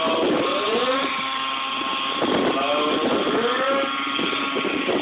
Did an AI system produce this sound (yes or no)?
no